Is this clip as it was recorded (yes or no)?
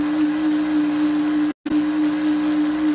yes